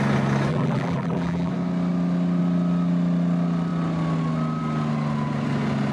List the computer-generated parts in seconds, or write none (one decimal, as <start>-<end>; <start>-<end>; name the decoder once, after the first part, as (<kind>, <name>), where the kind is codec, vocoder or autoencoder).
0.5-1.5 (vocoder, BigVGAN v2)